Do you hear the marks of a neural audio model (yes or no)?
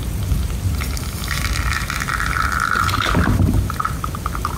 no